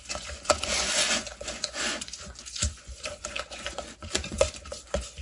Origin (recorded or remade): remade